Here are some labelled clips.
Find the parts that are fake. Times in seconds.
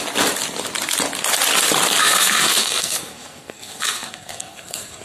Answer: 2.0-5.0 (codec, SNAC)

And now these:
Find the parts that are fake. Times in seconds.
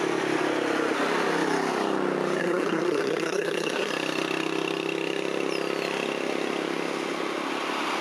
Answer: 2.4-3.9 (codec, SNAC)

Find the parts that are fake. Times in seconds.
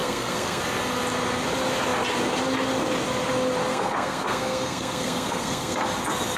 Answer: 0.0-0.6 (codec, SNAC); 3.7-5.8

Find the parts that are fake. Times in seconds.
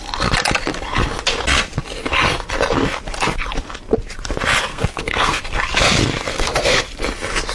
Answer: 4.7-5.4 (codec, SNAC); 6.3-6.8